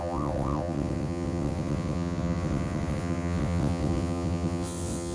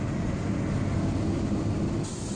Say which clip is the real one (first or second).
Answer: second